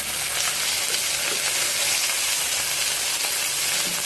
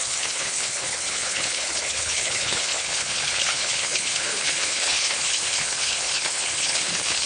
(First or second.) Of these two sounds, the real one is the first